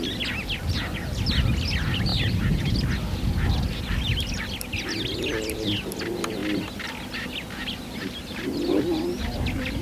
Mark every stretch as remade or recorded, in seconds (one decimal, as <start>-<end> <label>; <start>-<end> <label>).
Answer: 0.0-9.8 recorded